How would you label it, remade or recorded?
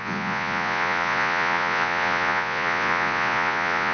remade